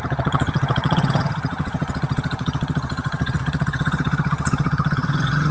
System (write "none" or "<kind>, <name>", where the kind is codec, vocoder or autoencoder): vocoder, HiFi-GAN